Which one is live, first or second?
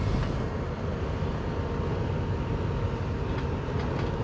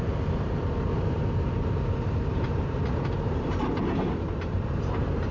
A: first